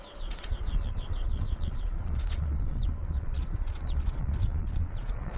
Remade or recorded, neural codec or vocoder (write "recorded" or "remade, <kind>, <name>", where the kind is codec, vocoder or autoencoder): remade, vocoder, Vocos